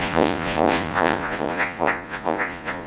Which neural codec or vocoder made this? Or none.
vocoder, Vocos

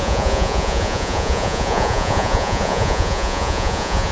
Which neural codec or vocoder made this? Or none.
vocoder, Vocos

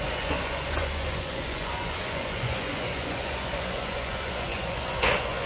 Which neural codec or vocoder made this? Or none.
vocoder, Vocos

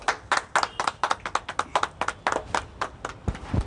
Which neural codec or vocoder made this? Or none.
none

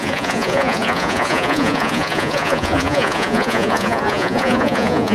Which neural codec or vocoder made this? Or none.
vocoder, Vocos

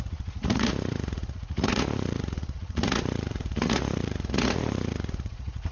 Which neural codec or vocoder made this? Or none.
vocoder, Vocos